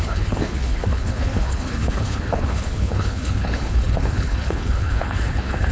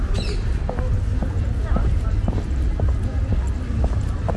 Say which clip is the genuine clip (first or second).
second